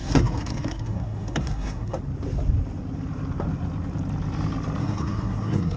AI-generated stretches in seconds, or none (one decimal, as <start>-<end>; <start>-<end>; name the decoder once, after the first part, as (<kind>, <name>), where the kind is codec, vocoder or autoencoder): 0.0-2.0 (codec, SNAC); 4.8-5.8